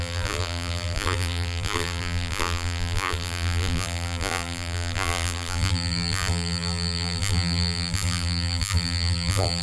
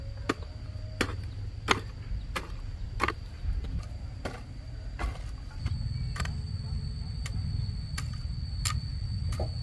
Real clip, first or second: second